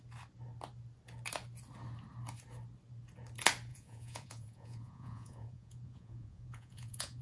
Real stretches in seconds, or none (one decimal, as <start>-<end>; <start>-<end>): 0.0-3.7